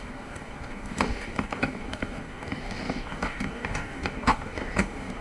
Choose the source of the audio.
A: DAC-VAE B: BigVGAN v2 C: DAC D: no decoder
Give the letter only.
C